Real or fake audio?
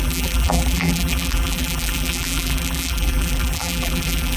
fake